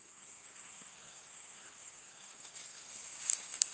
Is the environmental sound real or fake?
fake